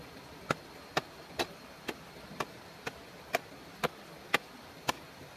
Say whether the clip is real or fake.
real